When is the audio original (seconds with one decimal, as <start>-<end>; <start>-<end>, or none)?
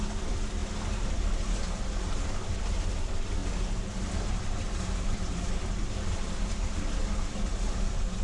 0.6-1.6; 3.4-4.0